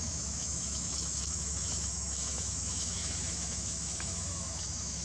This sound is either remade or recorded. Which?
remade